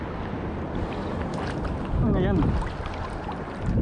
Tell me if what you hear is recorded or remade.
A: recorded